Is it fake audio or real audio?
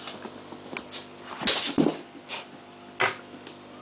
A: real